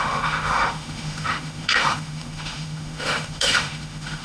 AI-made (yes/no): yes